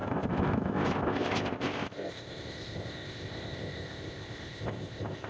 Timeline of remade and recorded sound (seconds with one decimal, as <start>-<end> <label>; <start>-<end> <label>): 0.0-5.3 remade